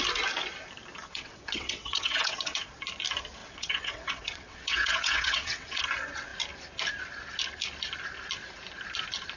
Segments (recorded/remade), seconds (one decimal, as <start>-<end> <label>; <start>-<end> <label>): 0.0-1.1 recorded; 1.1-2.7 remade; 2.7-3.4 recorded; 3.4-5.8 remade; 5.8-9.4 recorded